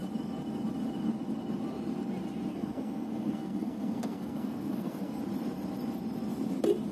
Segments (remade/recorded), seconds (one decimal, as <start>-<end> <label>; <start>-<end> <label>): 0.0-2.5 recorded; 2.5-5.2 remade; 5.2-6.9 recorded